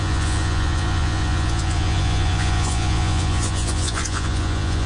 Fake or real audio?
fake